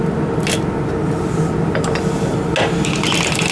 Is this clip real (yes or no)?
yes